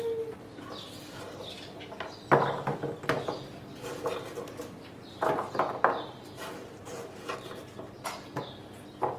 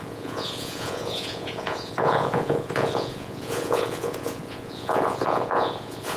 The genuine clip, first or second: first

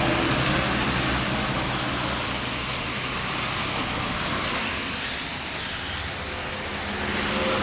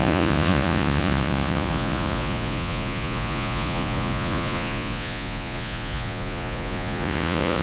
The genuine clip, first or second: first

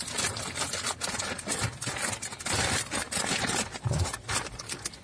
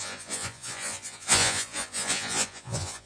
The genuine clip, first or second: first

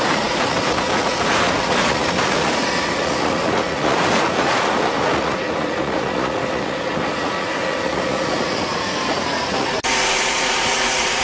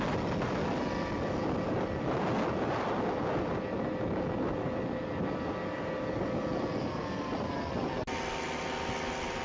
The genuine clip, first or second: second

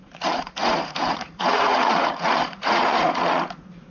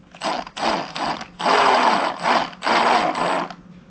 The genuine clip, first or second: second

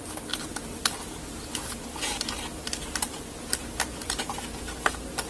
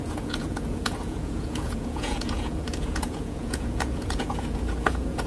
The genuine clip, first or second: first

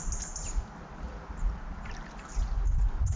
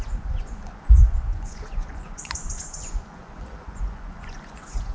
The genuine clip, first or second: first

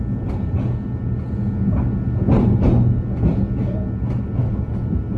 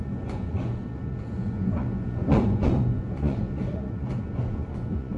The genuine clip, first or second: first